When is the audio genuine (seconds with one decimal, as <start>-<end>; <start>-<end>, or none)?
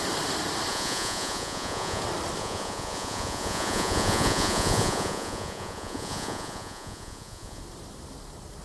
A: 0.0-0.7; 2.0-2.4; 7.6-8.6